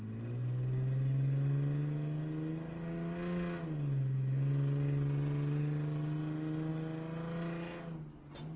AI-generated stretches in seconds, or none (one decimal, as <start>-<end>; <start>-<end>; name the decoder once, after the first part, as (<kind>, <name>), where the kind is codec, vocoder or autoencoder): none

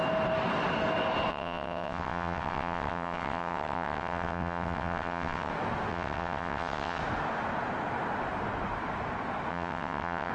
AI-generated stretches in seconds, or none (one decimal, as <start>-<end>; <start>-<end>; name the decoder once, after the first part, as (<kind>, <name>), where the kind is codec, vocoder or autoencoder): 1.3-5.5 (vocoder, WaveNeXt); 5.9-7.0; 9.5-10.3

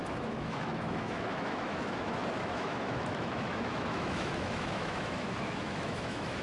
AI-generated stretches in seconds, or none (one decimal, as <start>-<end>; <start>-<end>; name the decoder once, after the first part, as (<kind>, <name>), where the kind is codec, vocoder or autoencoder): 0.0-6.4 (autoencoder, DAC-VAE)